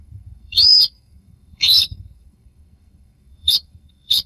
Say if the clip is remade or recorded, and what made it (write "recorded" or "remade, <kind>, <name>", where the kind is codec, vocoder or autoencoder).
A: remade, codec, SNAC